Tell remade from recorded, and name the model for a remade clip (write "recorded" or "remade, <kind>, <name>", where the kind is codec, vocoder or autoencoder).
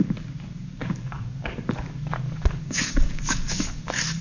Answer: remade, codec, DAC